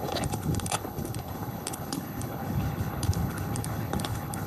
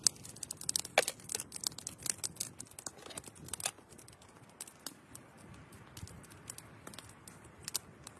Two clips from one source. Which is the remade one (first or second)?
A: first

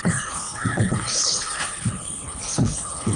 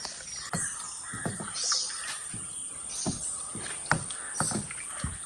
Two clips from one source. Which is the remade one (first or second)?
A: first